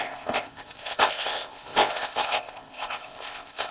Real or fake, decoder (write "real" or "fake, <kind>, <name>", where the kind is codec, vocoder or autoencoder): fake, codec, ZipCodec